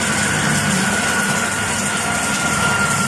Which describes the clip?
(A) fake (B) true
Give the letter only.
B